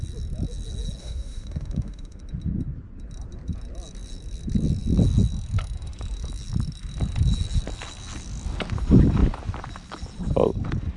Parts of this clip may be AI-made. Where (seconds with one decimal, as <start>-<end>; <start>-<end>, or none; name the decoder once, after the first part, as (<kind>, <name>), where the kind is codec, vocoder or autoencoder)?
1.0-2.2 (autoencoder, DAC-VAE)